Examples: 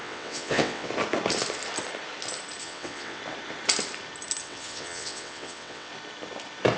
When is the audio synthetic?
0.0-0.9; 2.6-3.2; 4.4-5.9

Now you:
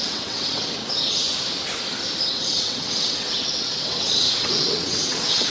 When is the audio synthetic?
0.0-0.8; 2.3-5.5

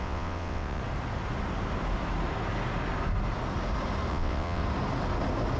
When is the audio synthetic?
0.0-0.8; 4.1-4.6